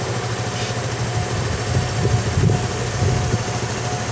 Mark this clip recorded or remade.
recorded